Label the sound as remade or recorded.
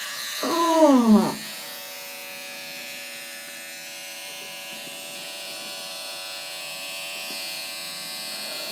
remade